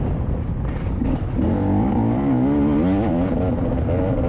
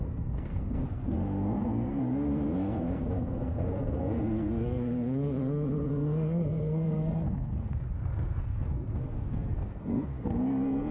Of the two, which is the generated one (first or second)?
second